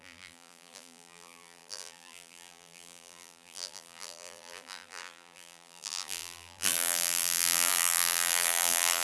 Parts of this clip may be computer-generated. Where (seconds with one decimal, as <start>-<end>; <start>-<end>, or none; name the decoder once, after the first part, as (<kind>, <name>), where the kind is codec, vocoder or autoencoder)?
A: 0.0-9.0 (vocoder, BigVGAN v2)